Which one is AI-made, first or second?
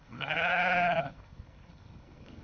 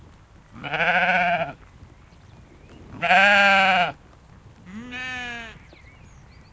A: first